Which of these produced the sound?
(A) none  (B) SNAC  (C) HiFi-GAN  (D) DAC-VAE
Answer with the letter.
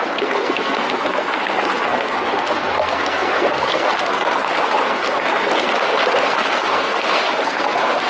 B